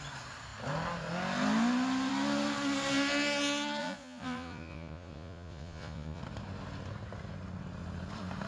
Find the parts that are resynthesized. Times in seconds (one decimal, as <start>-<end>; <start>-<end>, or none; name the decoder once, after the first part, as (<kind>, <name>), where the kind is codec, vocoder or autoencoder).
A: 3.8-6.2 (vocoder, Vocos)